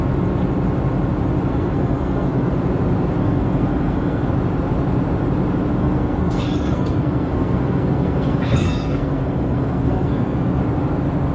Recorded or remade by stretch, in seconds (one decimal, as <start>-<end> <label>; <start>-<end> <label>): 0.0-1.5 recorded; 1.5-2.5 remade; 2.5-3.2 recorded; 3.2-4.3 remade; 4.3-5.8 recorded; 5.8-10.6 remade; 10.6-11.3 recorded